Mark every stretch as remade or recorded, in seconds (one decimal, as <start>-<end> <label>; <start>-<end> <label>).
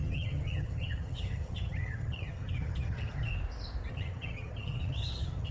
0.0-3.3 remade; 3.3-3.9 recorded; 3.9-5.5 remade